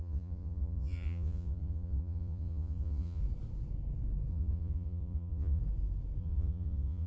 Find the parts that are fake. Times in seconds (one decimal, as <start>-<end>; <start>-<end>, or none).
0.0-3.2; 4.3-5.6; 6.2-7.1